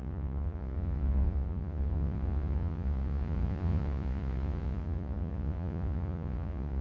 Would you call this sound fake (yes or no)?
yes